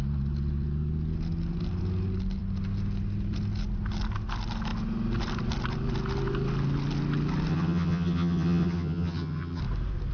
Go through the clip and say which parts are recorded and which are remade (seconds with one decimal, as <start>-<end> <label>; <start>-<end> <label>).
0.0-7.5 recorded; 7.5-9.6 remade; 9.6-10.1 recorded